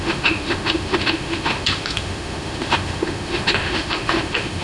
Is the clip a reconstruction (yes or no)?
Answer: yes